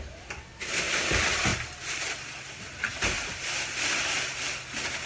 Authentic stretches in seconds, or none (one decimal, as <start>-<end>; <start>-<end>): 0.0-5.1